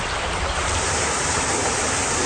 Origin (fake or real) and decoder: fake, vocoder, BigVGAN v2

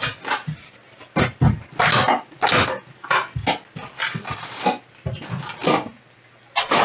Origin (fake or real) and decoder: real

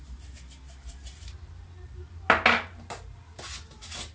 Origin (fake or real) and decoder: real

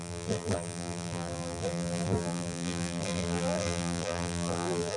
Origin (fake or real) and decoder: fake, vocoder, BigVGAN v2